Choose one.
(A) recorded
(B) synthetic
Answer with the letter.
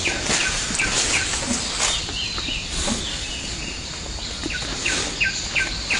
A